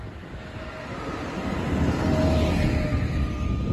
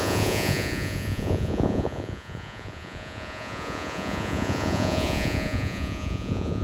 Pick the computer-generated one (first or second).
second